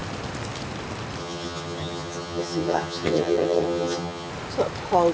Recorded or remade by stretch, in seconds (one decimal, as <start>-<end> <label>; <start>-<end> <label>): 0.0-1.2 recorded; 1.2-4.3 remade; 4.3-5.1 recorded